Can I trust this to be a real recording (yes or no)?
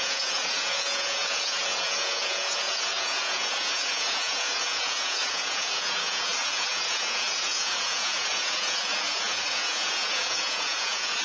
no